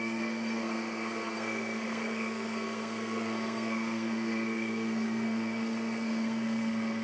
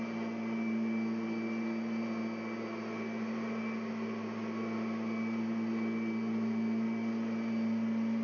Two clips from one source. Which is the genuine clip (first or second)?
second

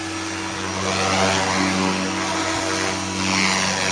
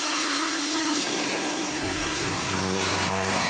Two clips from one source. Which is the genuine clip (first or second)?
first